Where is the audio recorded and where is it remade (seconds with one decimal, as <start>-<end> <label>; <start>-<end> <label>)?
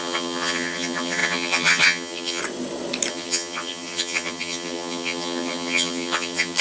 0.0-2.4 remade; 2.4-3.1 recorded; 3.1-6.6 remade